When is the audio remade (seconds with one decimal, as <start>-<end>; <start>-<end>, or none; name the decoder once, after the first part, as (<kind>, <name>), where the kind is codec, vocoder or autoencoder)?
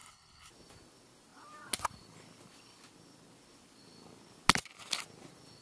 0.0-0.5 (codec, HILCodec)